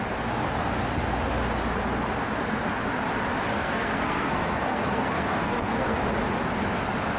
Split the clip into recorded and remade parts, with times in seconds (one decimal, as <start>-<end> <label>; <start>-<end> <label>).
0.0-3.5 recorded; 3.5-6.0 remade; 6.0-7.2 recorded